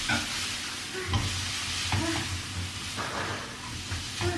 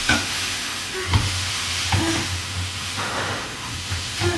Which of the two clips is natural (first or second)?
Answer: first